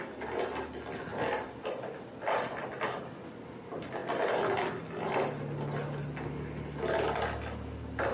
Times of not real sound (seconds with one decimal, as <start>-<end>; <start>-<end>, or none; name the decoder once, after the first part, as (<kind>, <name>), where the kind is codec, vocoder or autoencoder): 1.1-3.1 (vocoder, BigVGAN v2)